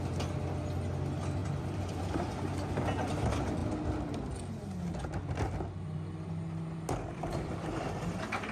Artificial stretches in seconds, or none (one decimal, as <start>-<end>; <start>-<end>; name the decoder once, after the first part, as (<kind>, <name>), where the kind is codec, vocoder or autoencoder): 1.4-2.0 (vocoder, BigVGAN v2); 7.1-7.9